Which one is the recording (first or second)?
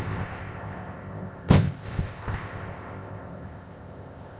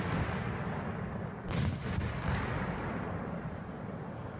second